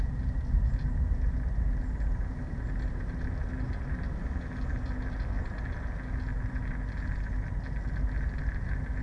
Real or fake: real